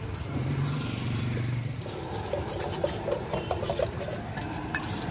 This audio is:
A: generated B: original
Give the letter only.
A